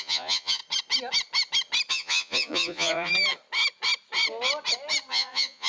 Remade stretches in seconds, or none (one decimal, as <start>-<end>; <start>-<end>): 0.0-0.6; 1.9-3.1; 5.1-5.7